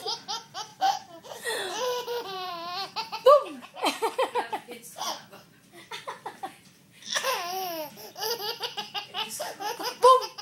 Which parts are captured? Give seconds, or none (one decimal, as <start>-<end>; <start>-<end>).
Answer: 0.0-0.7; 2.5-10.4